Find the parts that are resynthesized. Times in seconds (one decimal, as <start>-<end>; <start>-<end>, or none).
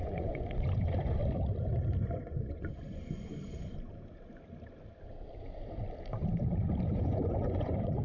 0.0-1.2; 2.0-3.3; 6.9-8.0